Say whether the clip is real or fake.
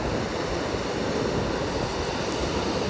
real